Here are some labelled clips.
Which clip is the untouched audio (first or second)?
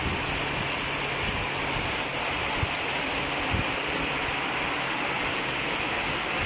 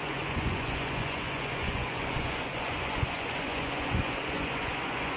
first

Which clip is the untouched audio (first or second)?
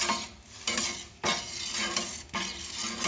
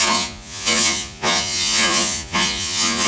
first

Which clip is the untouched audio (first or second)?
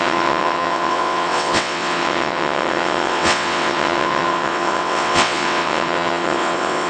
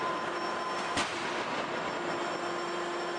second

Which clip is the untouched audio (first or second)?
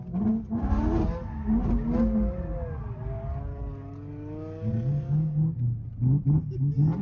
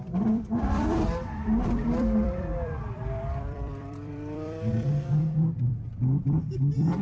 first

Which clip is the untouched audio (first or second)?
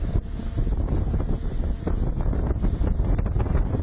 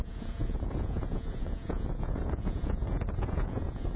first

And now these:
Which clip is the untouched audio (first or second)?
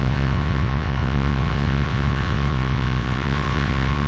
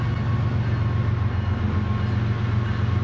second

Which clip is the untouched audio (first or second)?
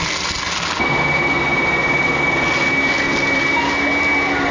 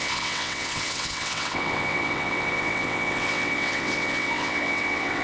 first